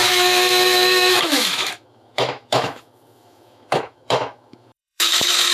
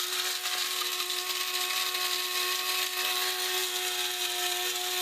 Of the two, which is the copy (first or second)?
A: first